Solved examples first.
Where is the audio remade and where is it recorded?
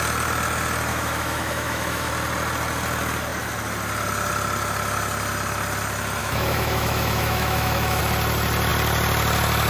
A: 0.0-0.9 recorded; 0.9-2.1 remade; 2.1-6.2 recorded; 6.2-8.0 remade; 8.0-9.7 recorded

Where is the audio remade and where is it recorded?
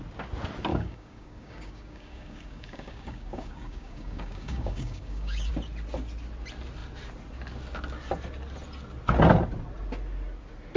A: 0.0-0.7 recorded; 0.7-5.5 remade; 5.5-10.8 recorded